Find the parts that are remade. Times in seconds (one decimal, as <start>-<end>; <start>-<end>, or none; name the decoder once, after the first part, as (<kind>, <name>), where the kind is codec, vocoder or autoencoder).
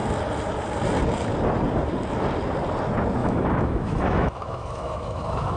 3.2-5.6 (autoencoder, DAC-VAE)